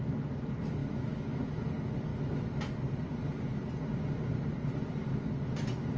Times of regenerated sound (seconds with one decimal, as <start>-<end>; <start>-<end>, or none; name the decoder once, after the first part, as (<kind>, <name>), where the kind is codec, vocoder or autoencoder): 0.8-1.5 (autoencoder, DAC-VAE)